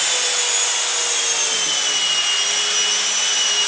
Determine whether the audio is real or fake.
real